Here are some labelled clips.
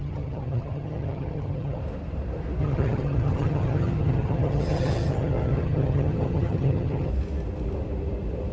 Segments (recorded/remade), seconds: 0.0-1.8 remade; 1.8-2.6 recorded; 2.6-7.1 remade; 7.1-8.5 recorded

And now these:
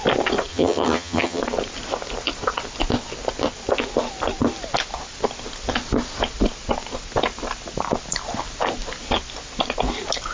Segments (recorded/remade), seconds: 0.0-0.5 recorded; 0.5-1.4 remade; 1.4-10.3 recorded

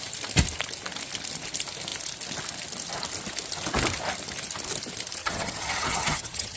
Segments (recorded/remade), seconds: 0.0-5.2 recorded; 5.2-6.6 remade